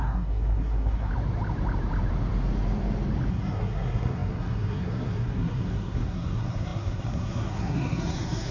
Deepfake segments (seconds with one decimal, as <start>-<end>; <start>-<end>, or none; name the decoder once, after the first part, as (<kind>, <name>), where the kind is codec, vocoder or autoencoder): 0.0-1.1 (codec, SNAC); 3.3-8.5